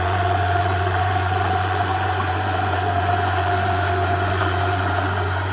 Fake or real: fake